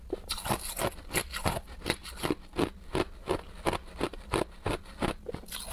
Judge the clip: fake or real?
real